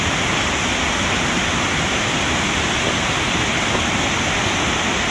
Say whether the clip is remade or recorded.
recorded